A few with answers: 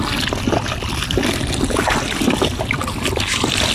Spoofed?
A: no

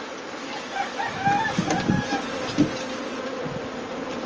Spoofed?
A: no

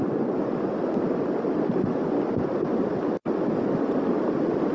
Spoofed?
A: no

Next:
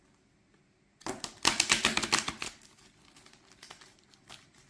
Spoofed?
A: no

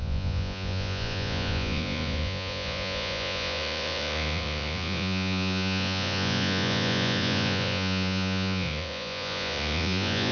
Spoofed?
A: yes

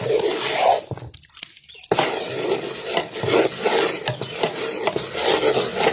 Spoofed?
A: no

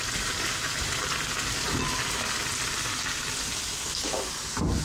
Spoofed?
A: no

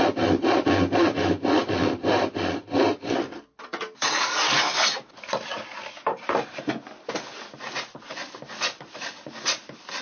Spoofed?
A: no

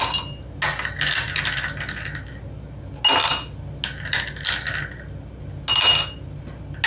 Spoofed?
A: no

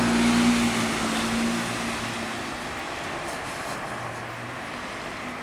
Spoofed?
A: no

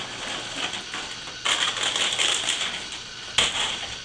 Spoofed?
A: no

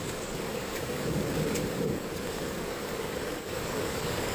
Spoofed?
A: yes